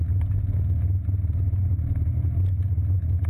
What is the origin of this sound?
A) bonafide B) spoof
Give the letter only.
A